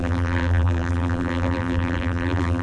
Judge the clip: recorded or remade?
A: remade